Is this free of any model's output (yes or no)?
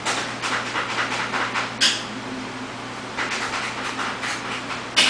yes